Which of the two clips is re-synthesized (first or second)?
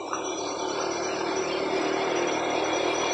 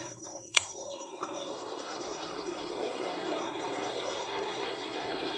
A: second